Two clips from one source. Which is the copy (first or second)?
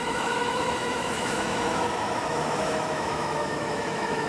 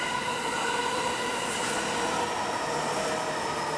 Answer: first